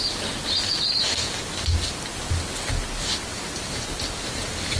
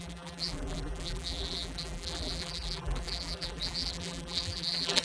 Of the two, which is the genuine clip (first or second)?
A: first